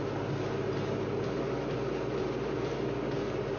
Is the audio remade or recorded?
recorded